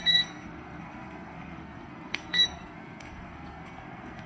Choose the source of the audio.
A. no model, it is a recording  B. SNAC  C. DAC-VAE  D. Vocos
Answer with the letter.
B